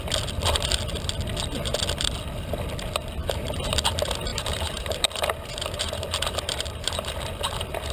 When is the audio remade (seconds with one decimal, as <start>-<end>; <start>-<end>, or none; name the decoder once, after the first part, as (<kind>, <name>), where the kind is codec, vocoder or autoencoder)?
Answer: 3.2-3.8 (vocoder, BigVGAN v2); 4.3-7.1